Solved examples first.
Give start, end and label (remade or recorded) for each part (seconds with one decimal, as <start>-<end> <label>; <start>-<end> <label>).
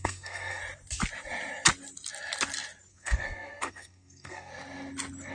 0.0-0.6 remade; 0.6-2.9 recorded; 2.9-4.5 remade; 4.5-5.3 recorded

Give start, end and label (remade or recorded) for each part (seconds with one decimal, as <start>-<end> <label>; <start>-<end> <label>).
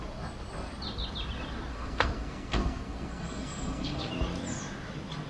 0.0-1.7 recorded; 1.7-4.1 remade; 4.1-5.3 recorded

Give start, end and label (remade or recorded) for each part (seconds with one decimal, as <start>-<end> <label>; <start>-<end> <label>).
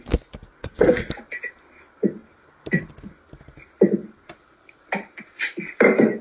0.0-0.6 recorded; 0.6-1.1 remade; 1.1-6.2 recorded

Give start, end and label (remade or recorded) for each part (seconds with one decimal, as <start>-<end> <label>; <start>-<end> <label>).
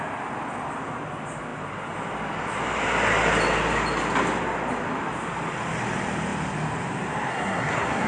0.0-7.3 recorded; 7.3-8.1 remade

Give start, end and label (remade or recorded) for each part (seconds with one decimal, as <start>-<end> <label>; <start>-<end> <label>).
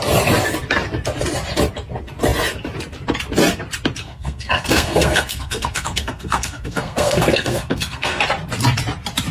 0.0-4.0 recorded; 4.0-8.2 remade; 8.2-9.3 recorded